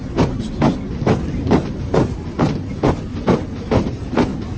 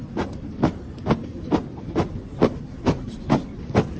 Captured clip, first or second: first